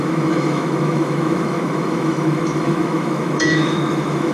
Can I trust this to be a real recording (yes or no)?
no